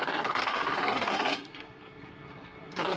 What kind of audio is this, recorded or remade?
remade